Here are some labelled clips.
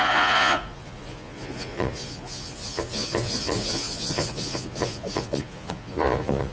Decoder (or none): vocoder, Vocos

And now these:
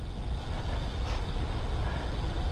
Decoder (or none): none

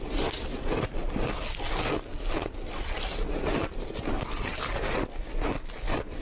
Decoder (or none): none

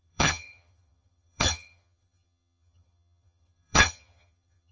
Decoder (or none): vocoder, HiFi-GAN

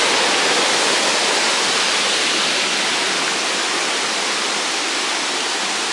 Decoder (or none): none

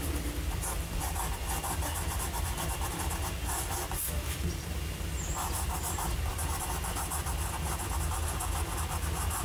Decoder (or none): none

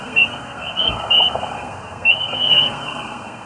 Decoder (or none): codec, SNAC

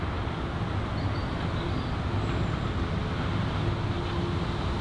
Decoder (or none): none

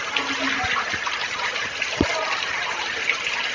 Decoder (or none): none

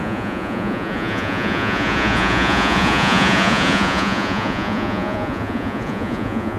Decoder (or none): vocoder, Vocos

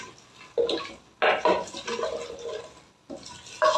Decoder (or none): none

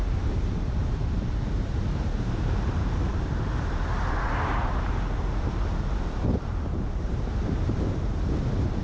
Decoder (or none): vocoder, BigVGAN v2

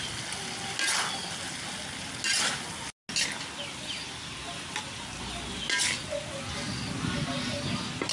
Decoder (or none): none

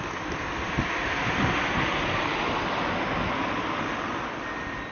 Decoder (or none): none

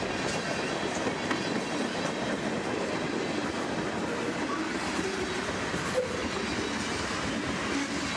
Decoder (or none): none